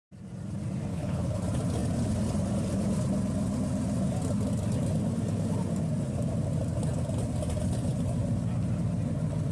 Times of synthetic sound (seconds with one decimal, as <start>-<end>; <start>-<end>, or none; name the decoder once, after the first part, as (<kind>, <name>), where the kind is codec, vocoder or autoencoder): 0.9-1.4 (codec, HILCodec)